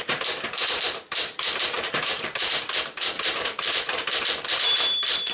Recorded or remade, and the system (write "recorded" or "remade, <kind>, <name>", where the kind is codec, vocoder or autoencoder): remade, vocoder, BigVGAN v2